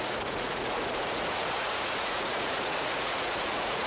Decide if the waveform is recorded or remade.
remade